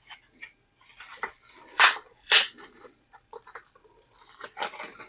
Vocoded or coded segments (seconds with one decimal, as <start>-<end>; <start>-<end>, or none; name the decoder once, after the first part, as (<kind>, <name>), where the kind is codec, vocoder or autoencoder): 1.1-4.2 (vocoder, BigVGAN v2)